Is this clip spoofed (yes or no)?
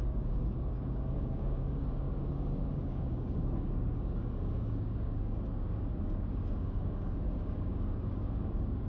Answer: yes